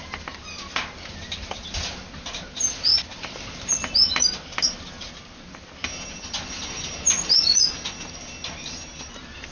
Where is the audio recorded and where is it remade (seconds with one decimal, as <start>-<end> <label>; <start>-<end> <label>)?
0.0-9.5 recorded

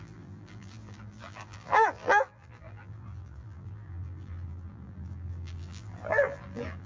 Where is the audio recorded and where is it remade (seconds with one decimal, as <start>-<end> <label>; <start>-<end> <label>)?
0.0-6.9 remade

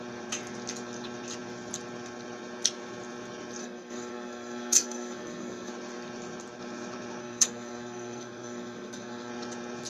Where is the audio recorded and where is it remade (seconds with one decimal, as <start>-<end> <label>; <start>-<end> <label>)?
0.0-3.6 recorded; 3.6-5.7 remade; 5.7-7.2 recorded; 7.2-9.3 remade; 9.3-9.9 recorded

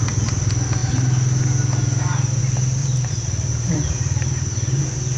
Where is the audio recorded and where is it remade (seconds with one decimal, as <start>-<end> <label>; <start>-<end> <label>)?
0.0-2.8 recorded; 2.8-4.8 remade; 4.8-5.2 recorded

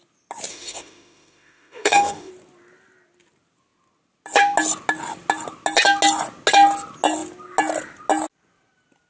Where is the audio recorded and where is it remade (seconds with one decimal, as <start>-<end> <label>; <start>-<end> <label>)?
0.0-0.5 recorded; 0.5-2.3 remade; 2.3-9.1 recorded

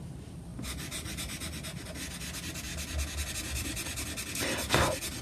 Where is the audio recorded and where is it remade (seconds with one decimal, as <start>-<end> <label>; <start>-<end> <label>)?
0.0-5.2 recorded

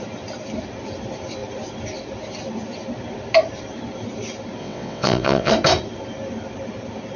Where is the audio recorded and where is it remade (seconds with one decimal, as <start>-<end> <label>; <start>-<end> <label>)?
0.0-4.6 recorded; 4.6-5.5 remade; 5.5-7.2 recorded